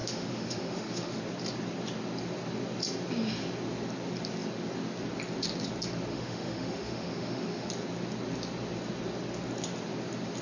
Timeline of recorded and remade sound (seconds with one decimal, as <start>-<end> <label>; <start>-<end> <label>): 0.0-1.2 remade; 1.2-6.1 recorded; 6.1-7.7 remade; 7.7-10.4 recorded